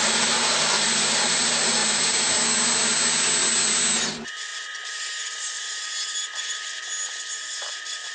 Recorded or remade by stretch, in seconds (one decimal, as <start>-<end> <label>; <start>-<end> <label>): 0.0-8.1 recorded